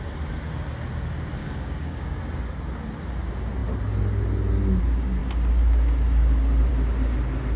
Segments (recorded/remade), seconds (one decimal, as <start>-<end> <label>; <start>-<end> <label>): 0.0-1.4 recorded; 1.4-2.2 remade; 2.2-7.6 recorded